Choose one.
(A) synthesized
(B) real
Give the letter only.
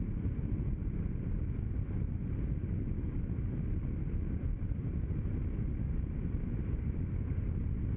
B